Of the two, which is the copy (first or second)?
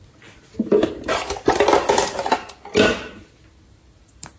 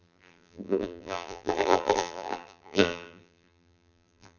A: second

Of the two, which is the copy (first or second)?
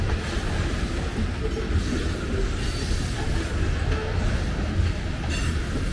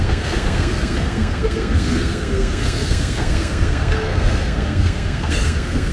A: second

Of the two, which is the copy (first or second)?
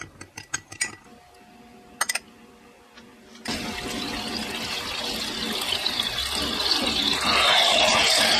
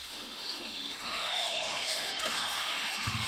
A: second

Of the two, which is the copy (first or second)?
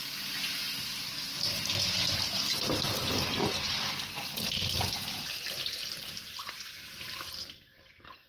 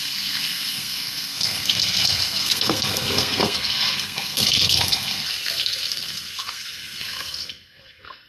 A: second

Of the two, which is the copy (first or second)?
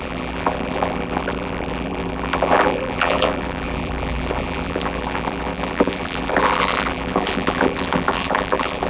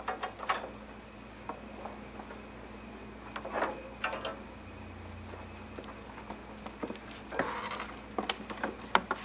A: first